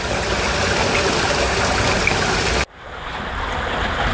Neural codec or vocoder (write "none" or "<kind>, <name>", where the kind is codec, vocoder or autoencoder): none